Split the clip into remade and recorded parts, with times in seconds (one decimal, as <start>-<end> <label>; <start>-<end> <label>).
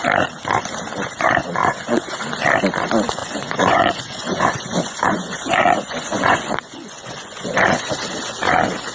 0.0-1.6 recorded; 1.6-2.3 remade; 2.3-3.2 recorded; 3.2-7.9 remade; 7.9-8.9 recorded